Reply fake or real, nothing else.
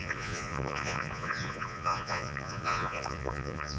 fake